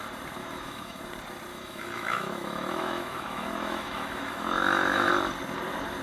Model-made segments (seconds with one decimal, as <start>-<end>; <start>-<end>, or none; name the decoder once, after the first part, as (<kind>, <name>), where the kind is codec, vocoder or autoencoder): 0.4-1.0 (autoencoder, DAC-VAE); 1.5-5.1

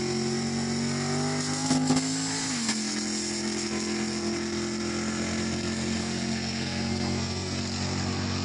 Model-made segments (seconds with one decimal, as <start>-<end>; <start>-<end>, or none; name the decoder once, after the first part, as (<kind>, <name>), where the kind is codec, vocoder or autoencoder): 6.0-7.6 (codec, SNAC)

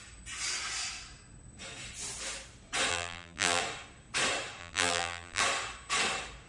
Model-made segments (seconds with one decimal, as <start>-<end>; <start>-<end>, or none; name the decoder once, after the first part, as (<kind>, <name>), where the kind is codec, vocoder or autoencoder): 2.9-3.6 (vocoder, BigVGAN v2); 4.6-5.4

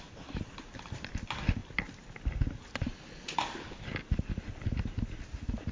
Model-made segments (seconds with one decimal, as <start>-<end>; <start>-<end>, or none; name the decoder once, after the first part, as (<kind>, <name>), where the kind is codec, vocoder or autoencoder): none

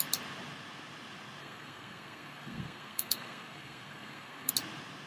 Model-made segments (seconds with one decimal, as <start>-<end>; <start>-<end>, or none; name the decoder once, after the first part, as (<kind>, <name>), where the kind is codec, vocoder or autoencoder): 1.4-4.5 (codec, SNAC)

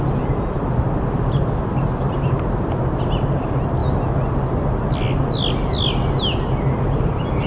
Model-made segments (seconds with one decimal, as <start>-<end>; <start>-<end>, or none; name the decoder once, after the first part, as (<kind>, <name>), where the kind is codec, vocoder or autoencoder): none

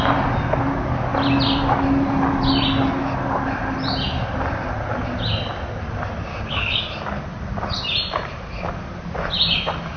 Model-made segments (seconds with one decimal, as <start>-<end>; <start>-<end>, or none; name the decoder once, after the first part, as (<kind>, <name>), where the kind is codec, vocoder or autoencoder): 6.3-6.8 (codec, DAC)